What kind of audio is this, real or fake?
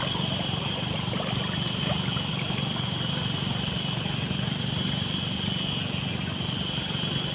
real